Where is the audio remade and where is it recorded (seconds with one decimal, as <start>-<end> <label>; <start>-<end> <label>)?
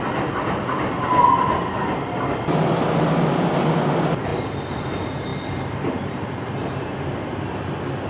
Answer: 0.0-8.1 recorded